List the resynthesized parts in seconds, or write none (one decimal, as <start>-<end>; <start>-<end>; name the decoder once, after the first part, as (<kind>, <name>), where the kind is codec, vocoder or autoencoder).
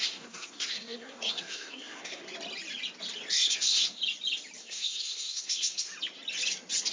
0.0-2.2 (codec, SNAC); 3.3-4.0; 4.6-5.9